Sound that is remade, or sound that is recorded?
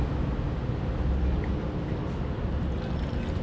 recorded